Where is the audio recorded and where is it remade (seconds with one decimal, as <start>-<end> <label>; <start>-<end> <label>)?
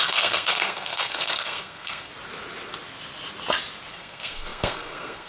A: 0.0-2.1 remade; 2.1-3.9 recorded; 3.9-5.3 remade